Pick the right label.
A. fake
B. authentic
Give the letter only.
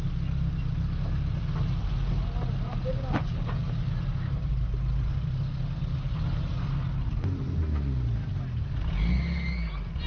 B